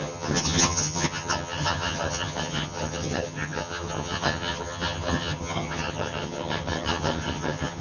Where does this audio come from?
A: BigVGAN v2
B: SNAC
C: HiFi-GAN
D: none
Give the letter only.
C